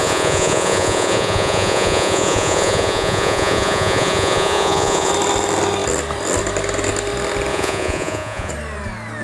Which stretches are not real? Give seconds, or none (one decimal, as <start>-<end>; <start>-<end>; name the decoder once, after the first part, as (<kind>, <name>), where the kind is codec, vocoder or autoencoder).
0.0-5.1 (vocoder, Vocos); 7.5-8.5